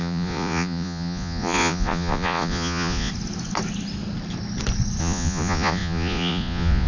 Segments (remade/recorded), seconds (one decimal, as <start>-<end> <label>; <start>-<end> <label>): 0.0-3.1 remade; 3.1-5.0 recorded; 5.0-6.9 remade